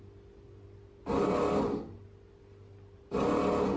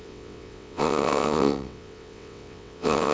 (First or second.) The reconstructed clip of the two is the second